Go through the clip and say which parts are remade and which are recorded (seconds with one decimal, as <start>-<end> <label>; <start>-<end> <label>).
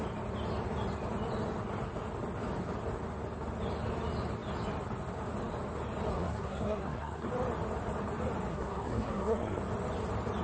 0.0-6.1 recorded; 6.1-7.3 remade; 7.3-8.5 recorded; 8.5-9.6 remade; 9.6-10.4 recorded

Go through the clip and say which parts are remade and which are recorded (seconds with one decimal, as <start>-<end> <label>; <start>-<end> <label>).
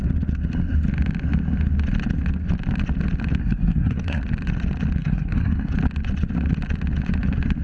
0.0-3.4 recorded; 3.4-4.2 remade; 4.2-5.0 recorded; 5.0-5.7 remade; 5.7-7.6 recorded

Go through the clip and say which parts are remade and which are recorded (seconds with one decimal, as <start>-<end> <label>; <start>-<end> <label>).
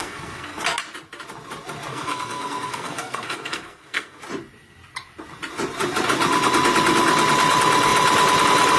0.0-0.6 remade; 0.6-1.9 recorded; 1.9-4.2 remade; 4.2-8.8 recorded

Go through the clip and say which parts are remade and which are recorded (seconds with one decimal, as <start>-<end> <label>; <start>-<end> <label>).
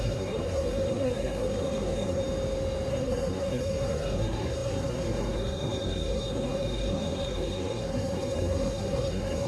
0.0-2.2 remade; 2.2-2.9 recorded; 2.9-9.5 remade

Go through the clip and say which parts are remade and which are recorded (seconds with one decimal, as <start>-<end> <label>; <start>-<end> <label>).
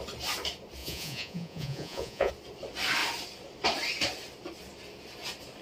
0.0-0.8 recorded; 0.8-2.3 remade; 2.3-5.6 recorded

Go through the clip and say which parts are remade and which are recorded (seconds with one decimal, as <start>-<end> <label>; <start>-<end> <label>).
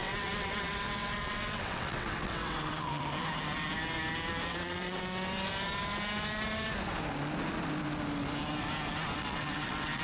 0.0-3.0 remade; 3.0-4.5 recorded; 4.5-5.0 remade; 5.0-9.2 recorded; 9.2-10.0 remade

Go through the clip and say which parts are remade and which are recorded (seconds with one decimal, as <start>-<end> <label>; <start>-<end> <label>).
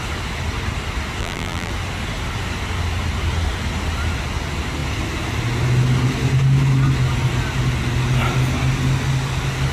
0.0-1.2 recorded; 1.2-1.7 remade; 1.7-9.7 recorded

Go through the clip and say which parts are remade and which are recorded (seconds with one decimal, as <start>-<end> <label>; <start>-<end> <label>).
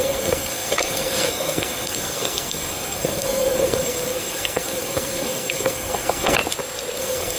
0.0-6.4 remade; 6.4-7.0 recorded; 7.0-7.4 remade